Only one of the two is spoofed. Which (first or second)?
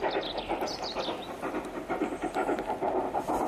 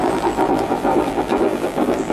second